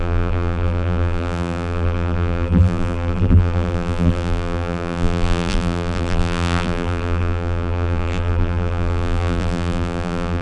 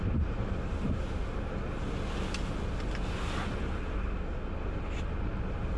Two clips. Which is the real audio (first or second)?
second